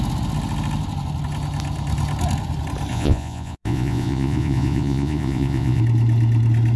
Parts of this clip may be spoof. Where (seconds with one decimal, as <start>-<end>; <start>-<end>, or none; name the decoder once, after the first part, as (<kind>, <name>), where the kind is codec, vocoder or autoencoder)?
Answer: 2.9-5.8 (vocoder, Vocos)